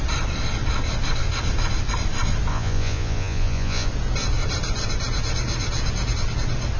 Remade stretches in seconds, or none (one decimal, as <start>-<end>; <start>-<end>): 2.5-3.9